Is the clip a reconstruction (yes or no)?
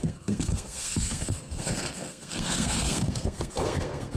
yes